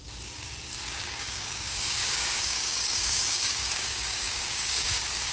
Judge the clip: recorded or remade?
remade